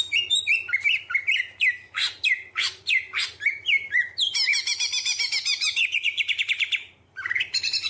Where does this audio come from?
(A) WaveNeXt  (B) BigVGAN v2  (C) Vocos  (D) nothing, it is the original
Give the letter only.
B